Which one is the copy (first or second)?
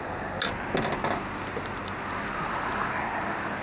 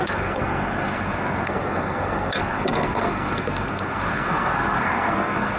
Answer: second